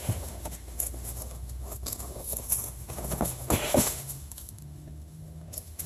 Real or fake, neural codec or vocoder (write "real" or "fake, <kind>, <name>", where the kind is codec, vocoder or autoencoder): fake, autoencoder, DAC-VAE